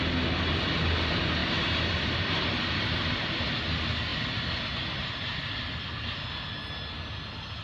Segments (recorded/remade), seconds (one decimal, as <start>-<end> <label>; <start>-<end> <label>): 0.0-1.4 recorded; 1.4-3.5 remade; 3.5-4.1 recorded; 4.1-5.7 remade; 5.7-7.6 recorded